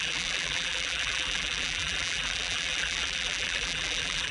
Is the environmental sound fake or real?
fake